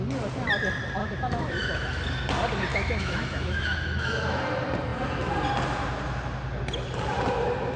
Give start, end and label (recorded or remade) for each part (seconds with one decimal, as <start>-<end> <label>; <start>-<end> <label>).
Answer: 0.0-1.0 recorded; 1.0-2.0 remade; 2.0-2.7 recorded; 2.7-4.4 remade; 4.4-7.8 recorded